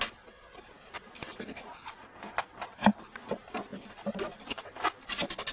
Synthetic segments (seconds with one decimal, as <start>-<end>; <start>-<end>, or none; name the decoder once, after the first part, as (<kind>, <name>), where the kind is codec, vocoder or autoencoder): none